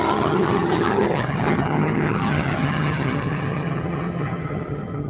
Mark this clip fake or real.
fake